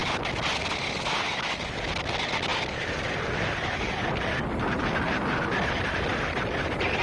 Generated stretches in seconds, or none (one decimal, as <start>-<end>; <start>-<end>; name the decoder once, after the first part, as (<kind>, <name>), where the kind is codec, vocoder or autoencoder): none